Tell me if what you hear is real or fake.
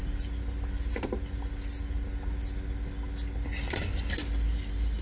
real